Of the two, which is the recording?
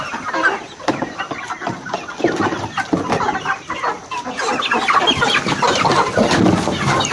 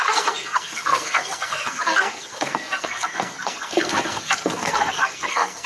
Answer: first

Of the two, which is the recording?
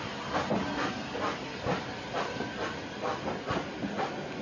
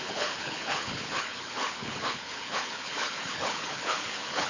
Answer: first